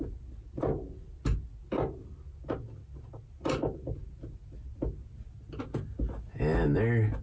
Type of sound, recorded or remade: recorded